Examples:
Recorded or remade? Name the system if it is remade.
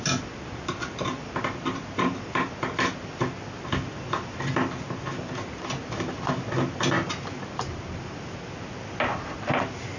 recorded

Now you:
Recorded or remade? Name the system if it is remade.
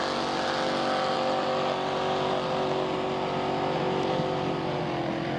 recorded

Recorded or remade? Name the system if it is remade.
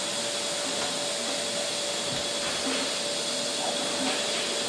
recorded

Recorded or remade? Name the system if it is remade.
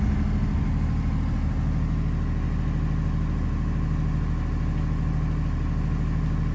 recorded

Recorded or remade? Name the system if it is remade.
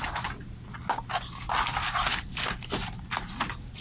recorded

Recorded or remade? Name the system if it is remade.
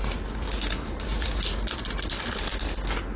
recorded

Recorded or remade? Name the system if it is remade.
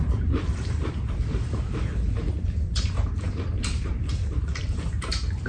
remade, vocoder, BigVGAN v2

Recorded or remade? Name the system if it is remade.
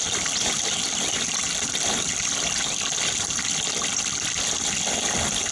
recorded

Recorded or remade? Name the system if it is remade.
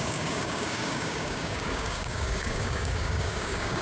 remade, codec, DAC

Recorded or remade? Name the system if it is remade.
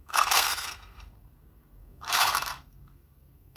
remade, codec, SNAC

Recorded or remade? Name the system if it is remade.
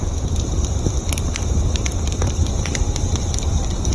remade, vocoder, BigVGAN v2